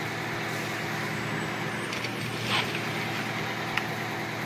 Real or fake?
real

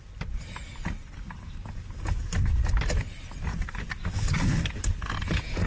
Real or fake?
real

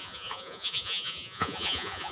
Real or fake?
fake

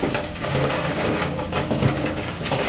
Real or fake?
fake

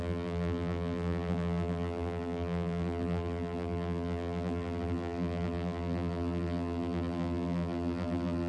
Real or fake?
fake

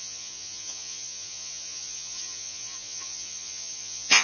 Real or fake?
fake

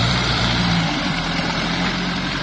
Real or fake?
fake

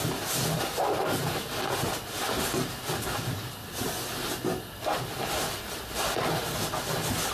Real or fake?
real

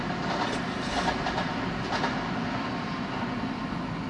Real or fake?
real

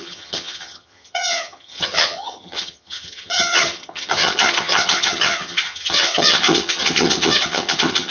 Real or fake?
fake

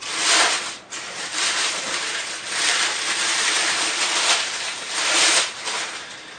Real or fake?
fake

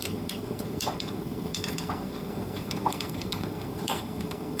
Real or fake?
fake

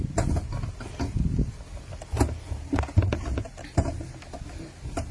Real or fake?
real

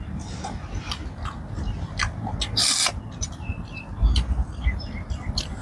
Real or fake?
real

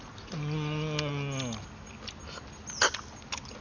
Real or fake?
real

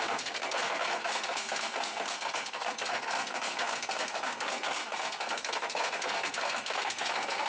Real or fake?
fake